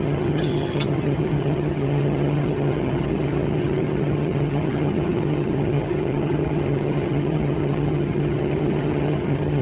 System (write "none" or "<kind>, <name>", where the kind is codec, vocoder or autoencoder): vocoder, HiFi-GAN